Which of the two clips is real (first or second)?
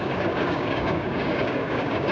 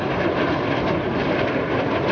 second